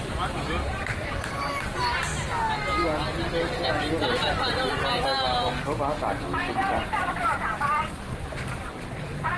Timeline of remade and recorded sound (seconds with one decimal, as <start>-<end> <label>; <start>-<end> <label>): 0.0-2.1 remade; 2.1-6.7 recorded; 6.7-9.4 remade